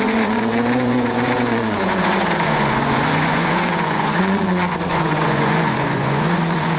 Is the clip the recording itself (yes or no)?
no